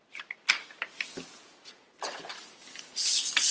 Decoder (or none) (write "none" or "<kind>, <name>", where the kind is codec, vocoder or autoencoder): none